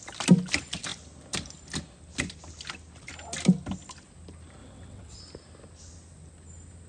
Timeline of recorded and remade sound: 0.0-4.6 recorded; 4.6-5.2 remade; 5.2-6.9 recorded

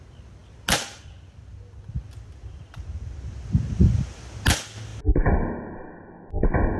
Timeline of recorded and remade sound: 0.0-6.8 recorded

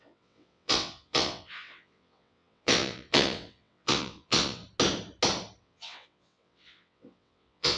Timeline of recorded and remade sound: 0.0-4.6 remade; 4.6-5.6 recorded; 5.6-7.8 remade

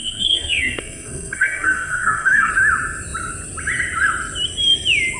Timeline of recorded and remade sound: 0.0-2.5 remade; 2.5-5.2 recorded

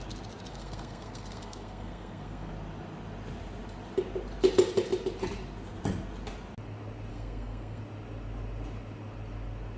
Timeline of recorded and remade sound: 0.0-0.5 recorded; 0.5-2.5 remade; 2.5-7.1 recorded; 7.1-7.8 remade; 7.8-9.8 recorded

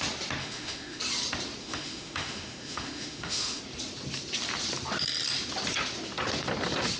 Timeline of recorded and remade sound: 0.0-0.4 recorded; 0.4-1.0 remade; 1.0-1.6 recorded; 1.6-3.6 remade; 3.6-7.0 recorded

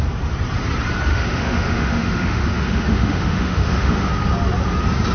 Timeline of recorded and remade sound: 0.0-1.1 recorded; 1.1-4.1 remade; 4.1-5.1 recorded

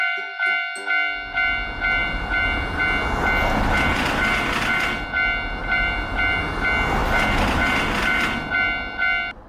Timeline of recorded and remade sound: 0.0-2.0 recorded; 2.0-2.8 remade; 2.8-5.6 recorded; 5.6-6.4 remade; 6.4-9.5 recorded